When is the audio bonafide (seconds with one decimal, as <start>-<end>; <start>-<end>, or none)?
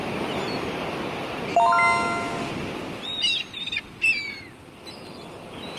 0.0-3.2